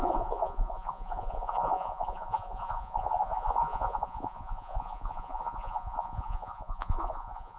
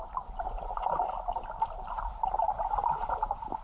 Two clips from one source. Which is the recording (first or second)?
second